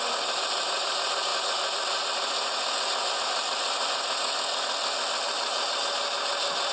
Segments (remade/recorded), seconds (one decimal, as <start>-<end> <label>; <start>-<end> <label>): 0.0-6.7 recorded